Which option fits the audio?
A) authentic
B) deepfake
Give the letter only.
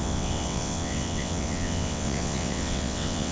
B